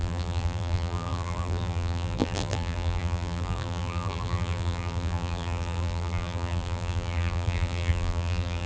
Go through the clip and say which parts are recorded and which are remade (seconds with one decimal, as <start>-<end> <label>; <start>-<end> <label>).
0.0-8.7 remade